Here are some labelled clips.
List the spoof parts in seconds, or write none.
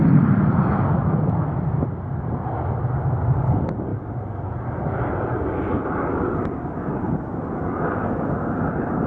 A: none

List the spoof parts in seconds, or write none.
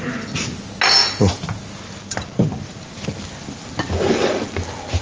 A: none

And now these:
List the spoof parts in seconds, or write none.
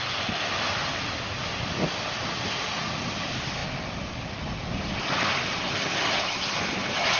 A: none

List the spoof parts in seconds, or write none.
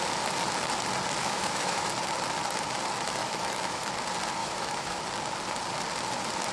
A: 1.2-1.9 (autoencoder, DAC-VAE); 3.2-3.9; 4.4-5.0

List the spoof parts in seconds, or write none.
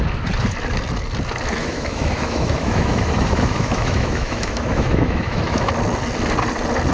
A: 1.6-5.7 (autoencoder, DAC-VAE)